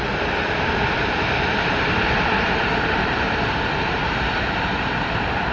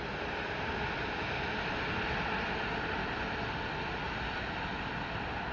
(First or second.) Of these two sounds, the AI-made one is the first